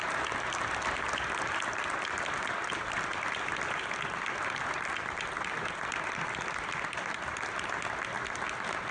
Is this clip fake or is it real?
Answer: real